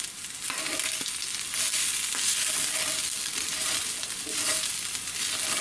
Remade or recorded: recorded